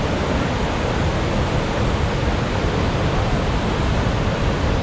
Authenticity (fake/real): real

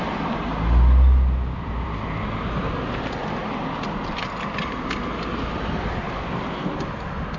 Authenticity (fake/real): real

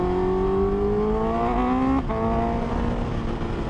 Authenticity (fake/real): real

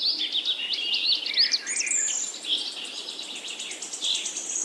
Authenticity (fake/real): real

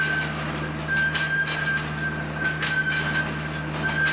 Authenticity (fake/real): real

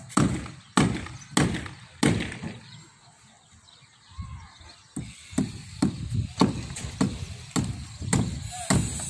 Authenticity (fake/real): real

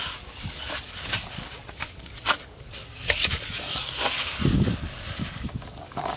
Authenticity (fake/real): fake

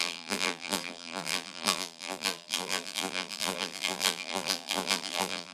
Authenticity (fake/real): fake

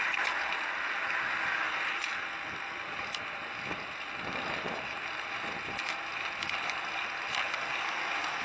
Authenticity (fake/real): real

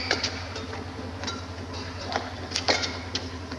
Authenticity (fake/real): real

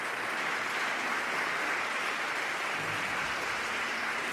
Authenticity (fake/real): real